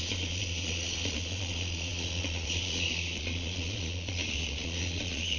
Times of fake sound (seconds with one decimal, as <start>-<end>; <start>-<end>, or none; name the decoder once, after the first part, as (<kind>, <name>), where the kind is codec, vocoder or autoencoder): 0.0-5.4 (vocoder, Vocos)